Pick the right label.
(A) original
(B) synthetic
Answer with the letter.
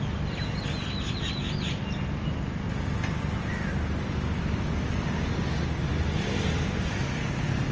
A